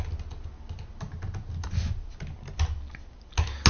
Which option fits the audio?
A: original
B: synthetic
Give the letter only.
A